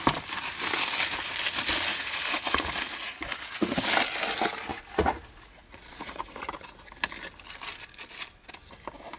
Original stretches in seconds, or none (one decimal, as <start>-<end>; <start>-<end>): 0.0-1.9; 3.8-4.7; 6.4-9.2